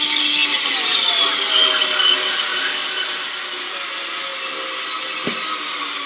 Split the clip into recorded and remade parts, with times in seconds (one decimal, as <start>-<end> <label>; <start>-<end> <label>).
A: 0.0-6.1 recorded